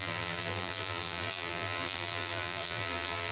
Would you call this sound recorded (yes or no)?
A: no